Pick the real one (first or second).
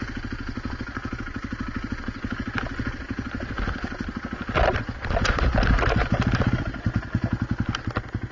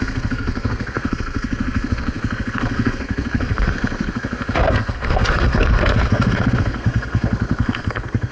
first